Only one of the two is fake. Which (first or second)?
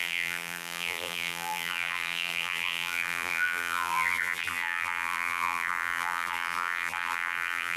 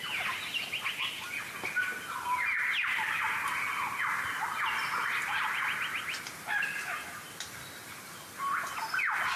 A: first